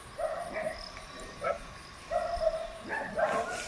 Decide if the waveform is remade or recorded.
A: recorded